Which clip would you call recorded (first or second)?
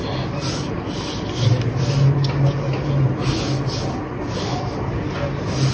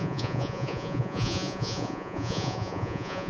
first